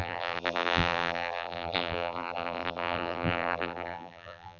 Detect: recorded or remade remade